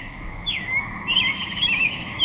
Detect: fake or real fake